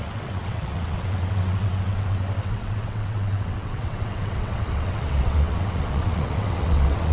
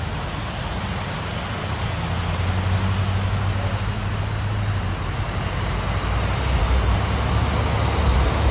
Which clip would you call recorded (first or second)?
second